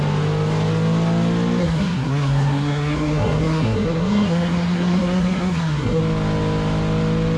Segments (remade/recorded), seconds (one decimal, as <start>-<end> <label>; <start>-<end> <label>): 0.0-1.6 recorded; 1.6-6.0 remade; 6.0-7.4 recorded